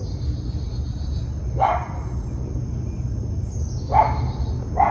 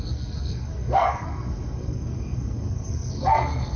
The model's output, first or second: second